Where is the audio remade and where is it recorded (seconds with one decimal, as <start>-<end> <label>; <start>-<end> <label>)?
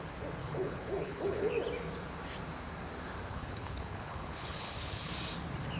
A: 0.0-0.4 recorded; 0.4-1.5 remade; 1.5-3.3 recorded; 3.3-5.1 remade; 5.1-5.8 recorded